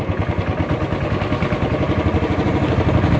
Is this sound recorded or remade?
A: recorded